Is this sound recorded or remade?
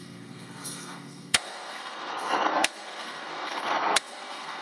remade